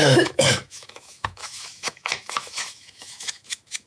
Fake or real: fake